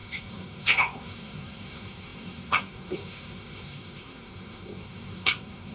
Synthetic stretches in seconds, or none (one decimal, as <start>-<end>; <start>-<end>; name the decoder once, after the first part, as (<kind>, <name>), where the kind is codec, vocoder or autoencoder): 0.0-5.7 (codec, SNAC)